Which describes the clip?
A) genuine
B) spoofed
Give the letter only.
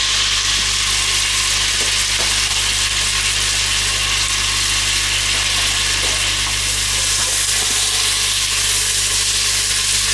A